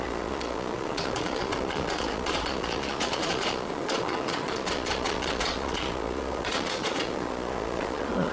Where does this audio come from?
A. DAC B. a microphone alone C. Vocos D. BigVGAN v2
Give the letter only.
C